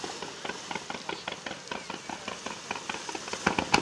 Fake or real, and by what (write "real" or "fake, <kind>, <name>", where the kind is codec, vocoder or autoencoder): real